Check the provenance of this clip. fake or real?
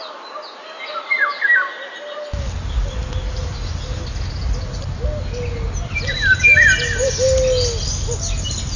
real